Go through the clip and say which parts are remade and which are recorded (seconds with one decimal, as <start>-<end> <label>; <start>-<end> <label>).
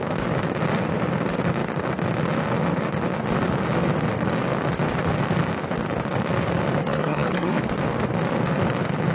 0.0-6.8 recorded; 6.8-7.6 remade; 7.6-9.1 recorded